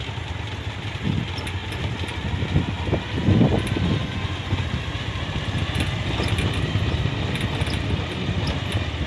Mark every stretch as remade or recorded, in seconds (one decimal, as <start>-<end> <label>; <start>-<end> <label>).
0.0-4.0 recorded; 4.0-4.6 remade; 4.6-9.1 recorded